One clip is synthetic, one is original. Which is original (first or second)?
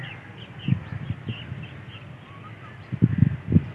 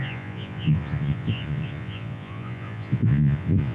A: first